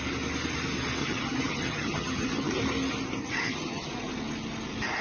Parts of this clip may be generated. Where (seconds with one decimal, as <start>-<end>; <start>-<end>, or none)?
1.0-2.5; 3.2-3.9